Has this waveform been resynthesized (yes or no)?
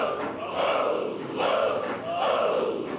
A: yes